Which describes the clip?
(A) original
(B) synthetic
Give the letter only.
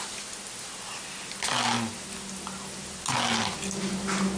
A